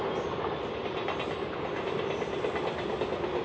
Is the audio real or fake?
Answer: real